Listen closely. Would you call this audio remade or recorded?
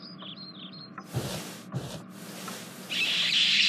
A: remade